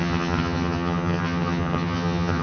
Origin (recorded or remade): remade